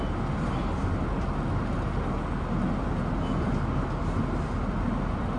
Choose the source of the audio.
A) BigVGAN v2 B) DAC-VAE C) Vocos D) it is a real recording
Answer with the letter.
D